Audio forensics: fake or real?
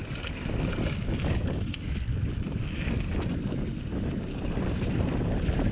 real